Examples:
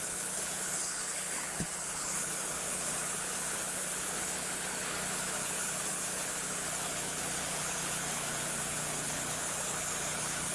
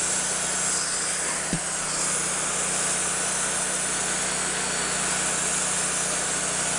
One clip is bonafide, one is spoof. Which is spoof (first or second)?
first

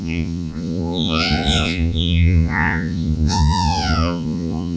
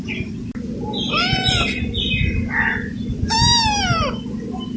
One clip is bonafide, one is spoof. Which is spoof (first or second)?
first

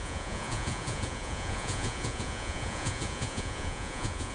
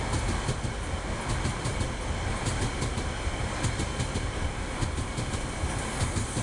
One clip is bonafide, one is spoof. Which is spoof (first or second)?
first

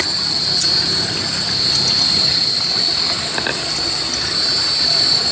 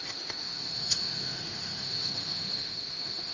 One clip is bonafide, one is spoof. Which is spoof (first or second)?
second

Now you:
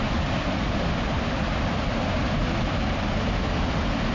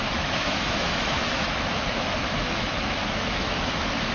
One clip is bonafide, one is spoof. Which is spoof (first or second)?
second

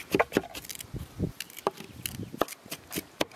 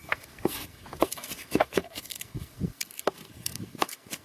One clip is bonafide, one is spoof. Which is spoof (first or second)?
second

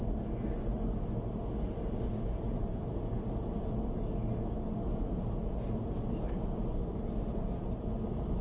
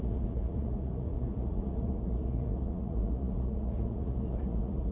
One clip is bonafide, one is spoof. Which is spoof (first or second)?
second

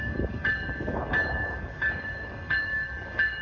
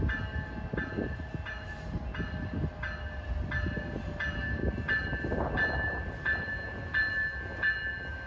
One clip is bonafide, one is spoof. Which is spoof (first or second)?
first